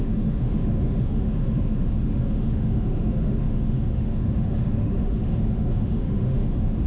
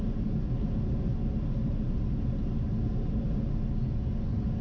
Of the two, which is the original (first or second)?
second